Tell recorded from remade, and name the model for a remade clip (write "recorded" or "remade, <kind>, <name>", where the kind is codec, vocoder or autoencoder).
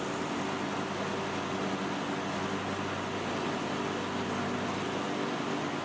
recorded